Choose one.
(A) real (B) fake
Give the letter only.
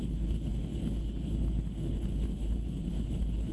B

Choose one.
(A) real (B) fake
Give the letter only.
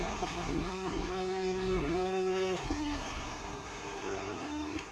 B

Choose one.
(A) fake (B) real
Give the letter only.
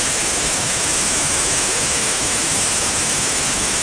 A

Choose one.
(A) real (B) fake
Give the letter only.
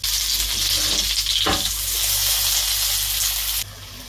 A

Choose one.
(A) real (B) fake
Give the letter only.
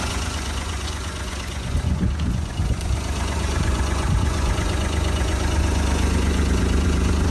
B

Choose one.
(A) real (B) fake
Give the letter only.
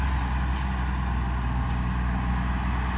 A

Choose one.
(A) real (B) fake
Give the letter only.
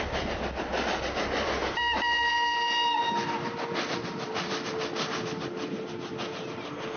A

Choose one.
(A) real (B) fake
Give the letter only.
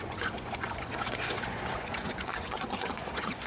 B